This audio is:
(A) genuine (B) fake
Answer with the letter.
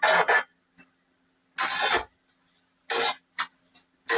A